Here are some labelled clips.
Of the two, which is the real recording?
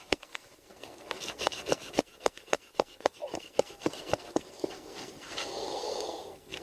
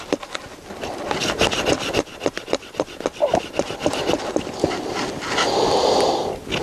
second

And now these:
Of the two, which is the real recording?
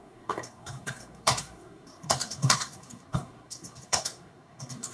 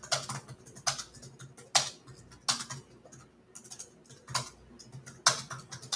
second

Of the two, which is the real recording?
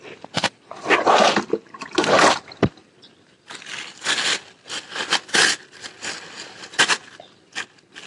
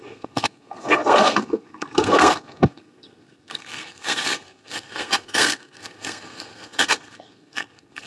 first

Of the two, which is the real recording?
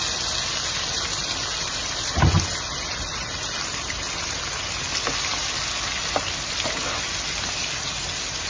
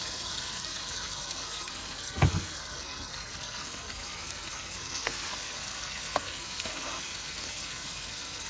first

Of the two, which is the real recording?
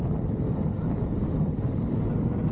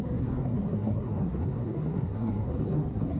first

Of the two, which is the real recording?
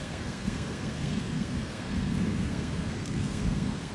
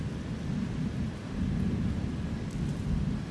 second